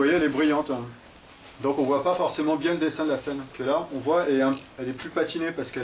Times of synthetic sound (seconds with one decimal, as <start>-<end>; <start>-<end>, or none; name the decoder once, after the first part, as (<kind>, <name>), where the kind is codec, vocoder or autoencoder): none

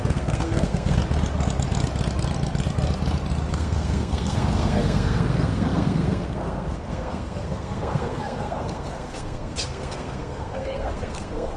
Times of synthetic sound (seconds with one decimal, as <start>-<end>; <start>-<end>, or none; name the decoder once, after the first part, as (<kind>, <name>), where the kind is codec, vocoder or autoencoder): 0.0-1.0 (codec, SNAC); 3.5-11.6

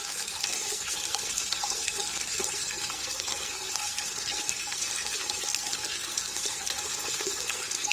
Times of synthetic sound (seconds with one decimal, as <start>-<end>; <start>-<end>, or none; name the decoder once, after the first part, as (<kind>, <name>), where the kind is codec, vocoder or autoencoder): 0.0-7.9 (codec, SNAC)

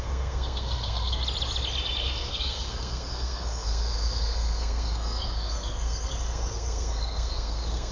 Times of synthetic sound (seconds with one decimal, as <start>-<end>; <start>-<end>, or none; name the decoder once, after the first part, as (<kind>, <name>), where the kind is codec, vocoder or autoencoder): 0.0-1.2 (codec, SNAC); 2.0-7.9